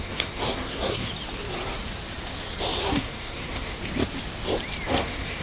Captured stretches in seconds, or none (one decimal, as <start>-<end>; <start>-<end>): 1.1-2.8; 3.8-4.9